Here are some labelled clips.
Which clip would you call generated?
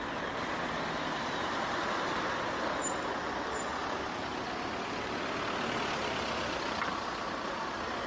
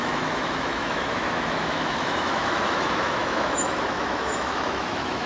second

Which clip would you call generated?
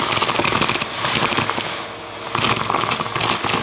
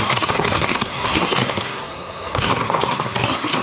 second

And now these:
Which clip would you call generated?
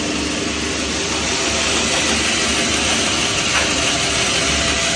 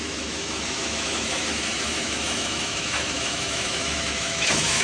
second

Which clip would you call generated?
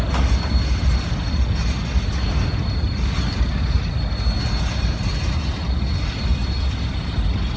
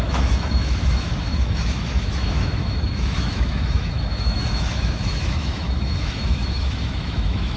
second